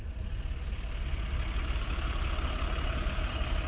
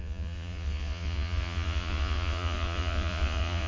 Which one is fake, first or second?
second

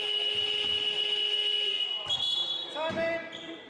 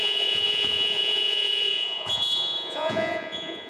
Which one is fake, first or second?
second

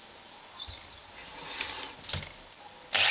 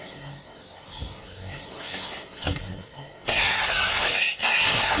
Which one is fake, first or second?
second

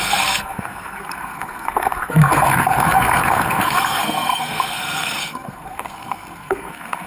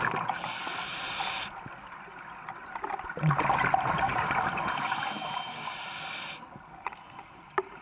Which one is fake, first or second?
first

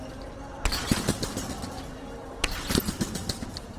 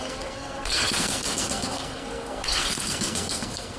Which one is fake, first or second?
second